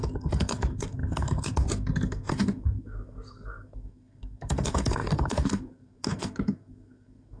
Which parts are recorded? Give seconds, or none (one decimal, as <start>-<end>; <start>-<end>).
none